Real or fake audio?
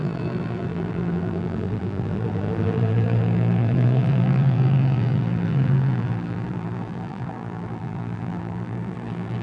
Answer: fake